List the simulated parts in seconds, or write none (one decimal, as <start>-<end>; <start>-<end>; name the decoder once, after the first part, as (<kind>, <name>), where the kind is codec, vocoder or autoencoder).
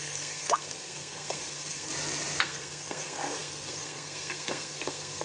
0.0-1.9 (codec, SNAC); 2.4-5.2